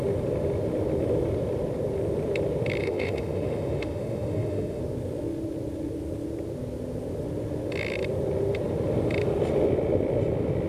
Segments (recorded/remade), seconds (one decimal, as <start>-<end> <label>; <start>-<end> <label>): 0.0-2.8 recorded; 2.8-4.8 remade; 4.8-10.7 recorded